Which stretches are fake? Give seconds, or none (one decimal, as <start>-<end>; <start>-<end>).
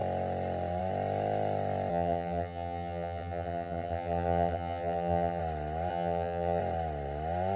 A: 1.9-5.4; 5.9-6.6